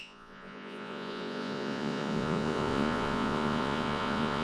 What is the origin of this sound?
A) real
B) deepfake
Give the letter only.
B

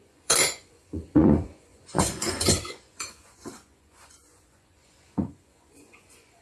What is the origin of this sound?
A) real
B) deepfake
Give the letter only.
B